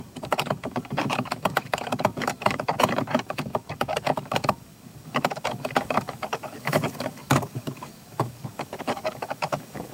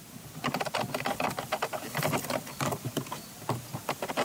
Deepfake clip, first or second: first